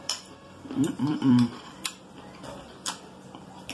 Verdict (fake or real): fake